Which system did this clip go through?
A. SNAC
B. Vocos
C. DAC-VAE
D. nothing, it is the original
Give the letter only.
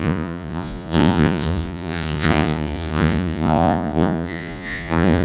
B